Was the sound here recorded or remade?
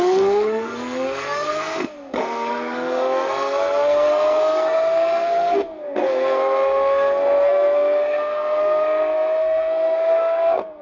remade